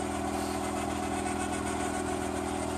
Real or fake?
real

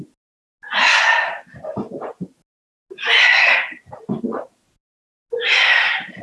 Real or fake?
real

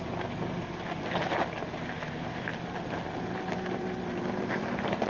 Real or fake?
fake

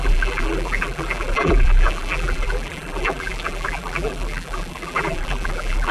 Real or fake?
fake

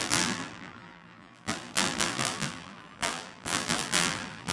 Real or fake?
fake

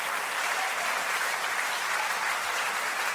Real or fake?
real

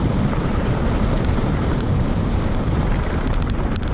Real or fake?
fake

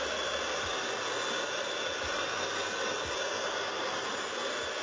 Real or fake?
fake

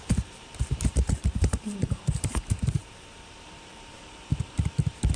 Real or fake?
fake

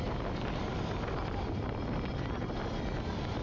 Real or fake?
real